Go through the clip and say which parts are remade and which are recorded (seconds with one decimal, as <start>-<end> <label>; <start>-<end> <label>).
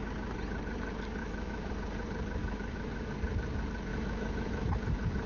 0.0-1.2 recorded; 1.2-1.7 remade; 1.7-2.4 recorded; 2.4-3.1 remade; 3.1-3.9 recorded; 3.9-4.7 remade; 4.7-5.3 recorded